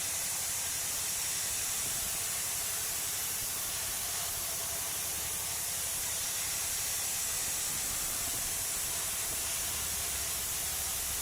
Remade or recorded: remade